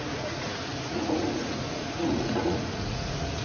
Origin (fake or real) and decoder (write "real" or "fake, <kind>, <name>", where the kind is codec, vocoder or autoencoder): fake, vocoder, Vocos